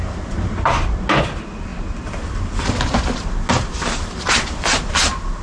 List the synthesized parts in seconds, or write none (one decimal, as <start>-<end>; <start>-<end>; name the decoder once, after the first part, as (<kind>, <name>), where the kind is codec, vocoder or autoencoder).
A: none